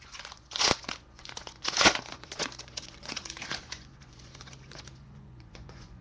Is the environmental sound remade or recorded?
remade